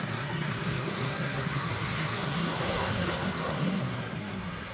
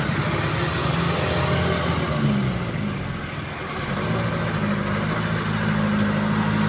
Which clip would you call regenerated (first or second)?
first